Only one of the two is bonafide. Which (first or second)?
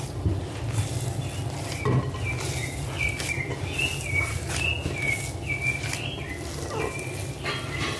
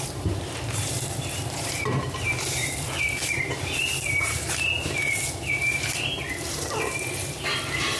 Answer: first